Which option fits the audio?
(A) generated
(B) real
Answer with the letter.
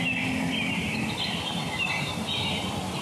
B